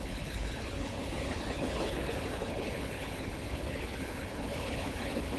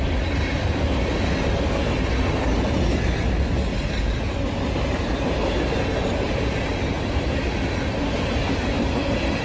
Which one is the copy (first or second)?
first